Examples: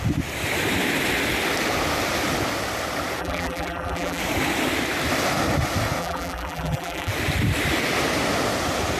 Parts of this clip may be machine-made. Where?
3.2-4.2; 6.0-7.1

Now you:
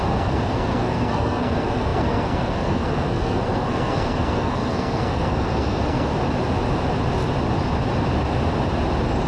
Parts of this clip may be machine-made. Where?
0.0-6.1

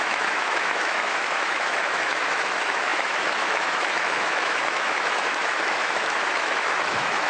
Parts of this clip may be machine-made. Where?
0.0-7.3